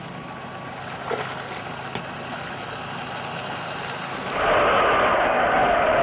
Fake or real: real